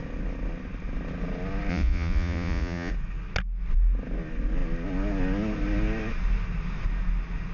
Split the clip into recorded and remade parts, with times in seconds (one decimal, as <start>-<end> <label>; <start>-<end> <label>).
0.0-1.7 recorded; 1.7-2.9 remade; 2.9-7.5 recorded